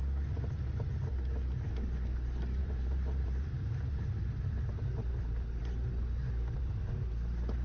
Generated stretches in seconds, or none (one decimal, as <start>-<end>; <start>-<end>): 2.6-5.1